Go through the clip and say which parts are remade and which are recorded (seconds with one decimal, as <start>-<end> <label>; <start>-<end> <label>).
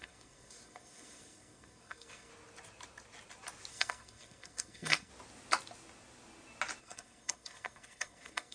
0.0-2.3 remade; 2.3-3.7 recorded; 3.7-5.1 remade; 5.1-6.8 recorded; 6.8-8.5 remade